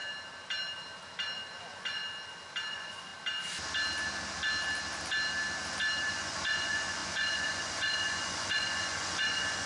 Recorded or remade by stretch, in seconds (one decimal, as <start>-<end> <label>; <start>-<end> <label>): 0.0-1.6 recorded; 1.6-2.0 remade; 2.0-2.7 recorded; 2.7-3.1 remade; 3.1-6.1 recorded; 6.1-9.7 remade